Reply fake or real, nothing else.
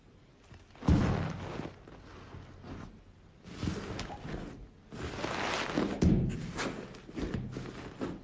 real